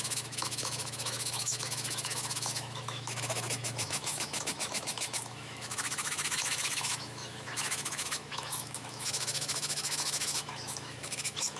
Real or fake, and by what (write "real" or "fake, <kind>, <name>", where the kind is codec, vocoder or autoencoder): fake, autoencoder, DAC-VAE